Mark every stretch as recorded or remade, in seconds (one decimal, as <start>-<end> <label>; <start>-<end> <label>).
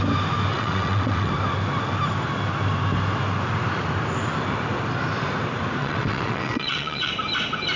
0.0-0.5 recorded; 0.5-1.3 remade; 1.3-5.8 recorded; 5.8-7.1 remade; 7.1-7.8 recorded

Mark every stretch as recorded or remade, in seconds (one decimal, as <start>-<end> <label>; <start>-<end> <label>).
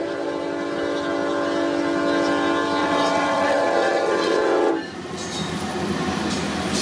0.0-2.8 recorded; 2.8-4.7 remade; 4.7-6.8 recorded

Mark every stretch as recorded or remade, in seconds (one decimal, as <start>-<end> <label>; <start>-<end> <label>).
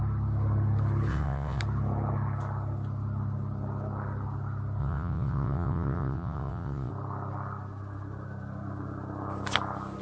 0.0-1.1 recorded; 1.1-1.6 remade; 1.6-4.8 recorded; 4.8-6.9 remade; 6.9-10.0 recorded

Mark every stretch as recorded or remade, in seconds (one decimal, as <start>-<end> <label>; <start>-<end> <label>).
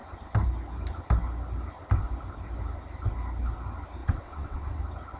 0.0-4.0 recorded; 4.0-4.8 remade; 4.8-5.2 recorded